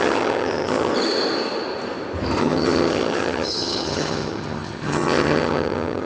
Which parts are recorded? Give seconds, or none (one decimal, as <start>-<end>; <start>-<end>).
0.9-2.4